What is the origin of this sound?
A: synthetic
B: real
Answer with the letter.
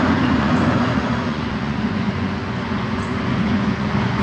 A